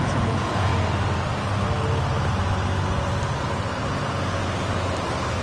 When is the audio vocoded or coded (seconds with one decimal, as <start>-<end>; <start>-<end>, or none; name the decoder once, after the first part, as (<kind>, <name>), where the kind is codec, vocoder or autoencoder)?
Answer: 0.0-0.7 (vocoder, Vocos); 3.9-4.4